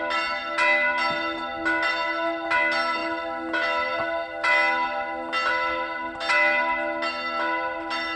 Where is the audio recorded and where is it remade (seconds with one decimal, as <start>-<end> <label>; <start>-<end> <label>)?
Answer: 0.0-8.2 recorded

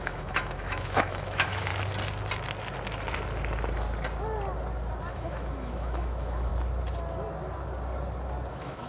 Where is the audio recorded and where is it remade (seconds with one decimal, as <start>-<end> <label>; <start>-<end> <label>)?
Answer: 0.0-1.7 remade; 1.7-5.1 recorded; 5.1-6.5 remade; 6.5-8.5 recorded; 8.5-8.9 remade

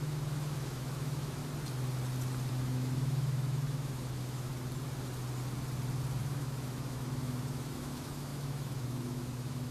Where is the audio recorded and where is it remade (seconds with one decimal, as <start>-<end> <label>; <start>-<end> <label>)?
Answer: 0.0-1.4 remade; 1.4-2.5 recorded; 2.5-4.5 remade; 4.5-6.2 recorded; 6.2-9.7 remade

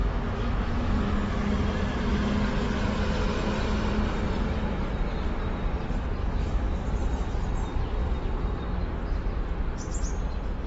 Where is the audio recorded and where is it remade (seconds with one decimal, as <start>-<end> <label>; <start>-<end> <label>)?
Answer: 0.0-1.0 remade; 1.0-6.2 recorded; 6.2-6.9 remade; 6.9-10.7 recorded

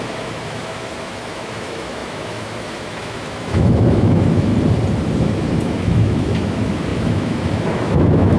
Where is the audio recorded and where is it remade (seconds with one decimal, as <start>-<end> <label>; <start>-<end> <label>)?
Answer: 0.0-4.5 remade; 4.5-5.2 recorded; 5.2-8.4 remade